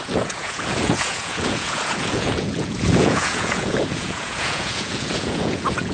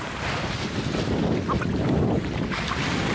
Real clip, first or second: second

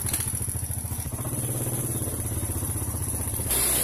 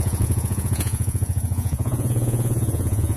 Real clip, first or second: first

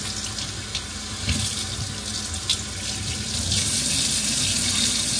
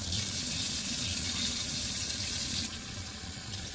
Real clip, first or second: first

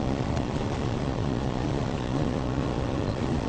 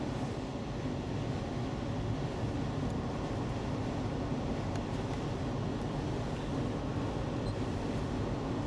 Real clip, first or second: second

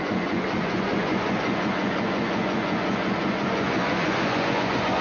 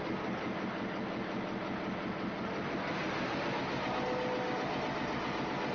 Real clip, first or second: second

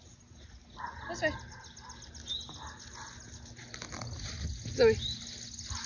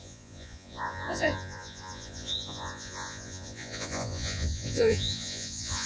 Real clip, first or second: first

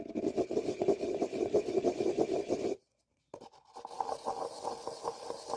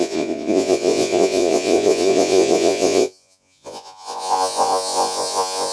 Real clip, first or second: first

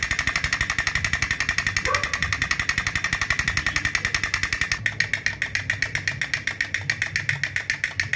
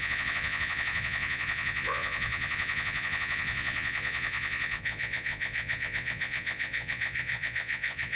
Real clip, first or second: first